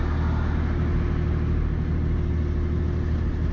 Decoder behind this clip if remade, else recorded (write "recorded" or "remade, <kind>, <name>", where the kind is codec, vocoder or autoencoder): recorded